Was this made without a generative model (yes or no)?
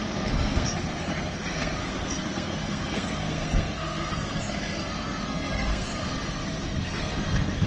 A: no